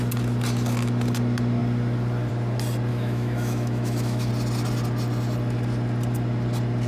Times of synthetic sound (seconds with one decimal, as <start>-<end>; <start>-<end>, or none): 2.9-4.3